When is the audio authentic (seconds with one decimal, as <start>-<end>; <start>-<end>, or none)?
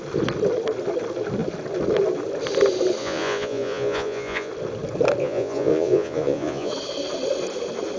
0.0-3.0; 4.5-5.2; 6.7-8.0